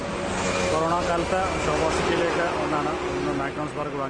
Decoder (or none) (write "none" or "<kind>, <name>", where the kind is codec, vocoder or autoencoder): none